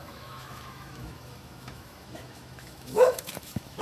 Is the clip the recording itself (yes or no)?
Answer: no